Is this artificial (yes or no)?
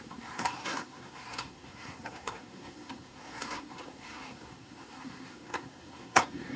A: yes